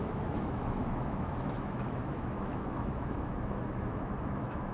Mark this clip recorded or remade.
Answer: remade